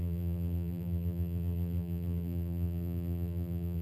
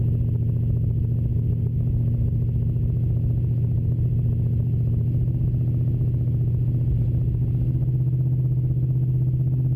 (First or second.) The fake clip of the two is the first